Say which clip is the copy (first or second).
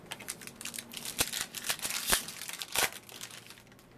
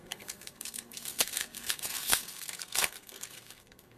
second